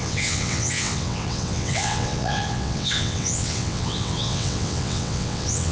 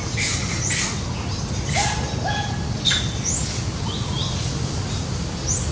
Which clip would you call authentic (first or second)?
second